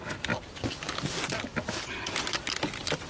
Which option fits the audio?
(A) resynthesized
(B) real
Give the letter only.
B